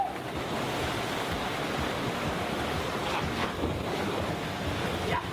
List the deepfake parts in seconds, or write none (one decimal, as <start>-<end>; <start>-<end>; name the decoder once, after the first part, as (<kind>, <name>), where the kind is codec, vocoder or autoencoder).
3.4-4.3 (codec, DAC)